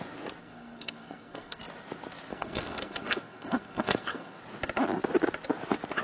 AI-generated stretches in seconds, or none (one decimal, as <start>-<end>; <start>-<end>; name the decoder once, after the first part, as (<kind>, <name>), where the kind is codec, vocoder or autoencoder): 0.4-1.6 (codec, SNAC); 2.3-4.4